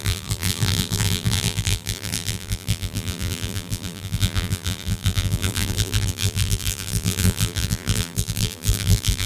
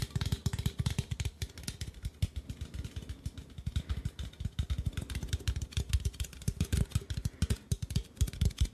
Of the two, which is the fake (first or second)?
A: first